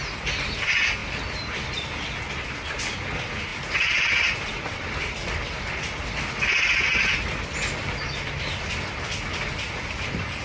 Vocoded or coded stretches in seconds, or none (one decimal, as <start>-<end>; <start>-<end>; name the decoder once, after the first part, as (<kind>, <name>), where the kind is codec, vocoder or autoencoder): 1.0-2.4 (vocoder, BigVGAN v2); 3.5-6.3